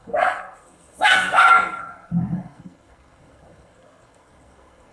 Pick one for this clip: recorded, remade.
remade